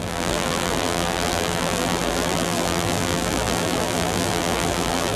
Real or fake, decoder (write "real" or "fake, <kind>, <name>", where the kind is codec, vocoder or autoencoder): fake, vocoder, BigVGAN v2